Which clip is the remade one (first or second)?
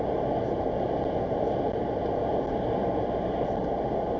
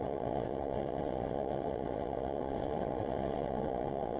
second